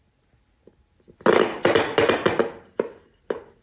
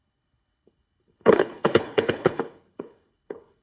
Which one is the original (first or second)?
first